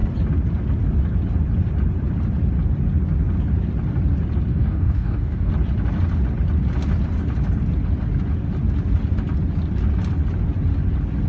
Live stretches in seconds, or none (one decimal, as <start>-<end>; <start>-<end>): 0.0-4.5; 5.5-11.3